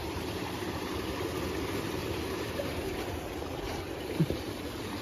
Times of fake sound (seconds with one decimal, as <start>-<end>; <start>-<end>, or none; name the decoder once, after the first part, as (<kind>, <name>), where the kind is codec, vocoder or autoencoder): 0.0-1.0 (vocoder, BigVGAN v2); 2.0-3.8